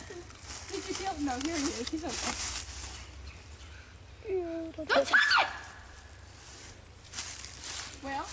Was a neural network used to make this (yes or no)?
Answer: no